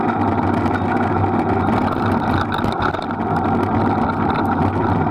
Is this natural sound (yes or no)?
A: yes